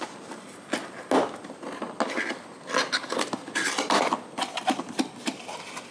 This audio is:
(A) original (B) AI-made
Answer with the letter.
A